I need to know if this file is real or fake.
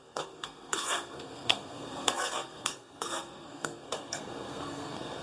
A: fake